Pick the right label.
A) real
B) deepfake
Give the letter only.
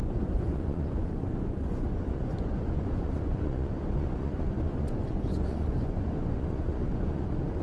B